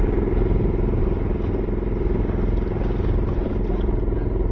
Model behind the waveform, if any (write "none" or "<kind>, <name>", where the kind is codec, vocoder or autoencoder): none